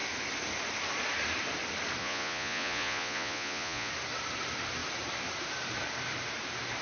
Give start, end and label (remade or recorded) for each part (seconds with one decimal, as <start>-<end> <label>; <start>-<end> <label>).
0.0-2.0 recorded; 2.0-3.9 remade; 3.9-6.8 recorded